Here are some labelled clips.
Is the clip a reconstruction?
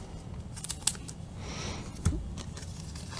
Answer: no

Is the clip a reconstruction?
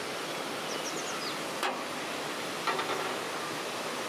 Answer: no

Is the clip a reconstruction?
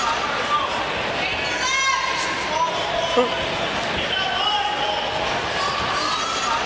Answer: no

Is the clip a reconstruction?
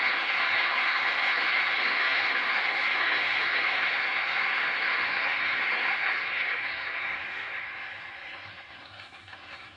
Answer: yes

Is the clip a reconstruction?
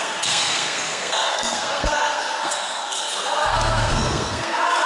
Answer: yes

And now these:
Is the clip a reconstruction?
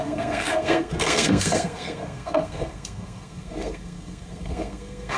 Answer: yes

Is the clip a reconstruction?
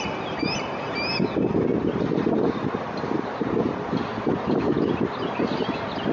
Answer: no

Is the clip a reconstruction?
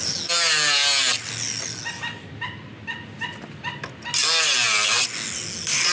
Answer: no